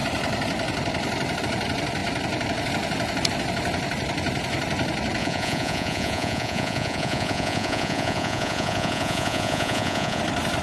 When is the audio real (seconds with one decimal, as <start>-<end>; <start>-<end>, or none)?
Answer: 0.0-5.2; 10.2-10.6